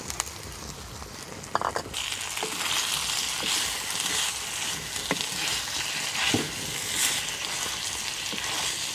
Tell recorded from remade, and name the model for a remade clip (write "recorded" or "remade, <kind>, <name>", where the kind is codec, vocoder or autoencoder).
recorded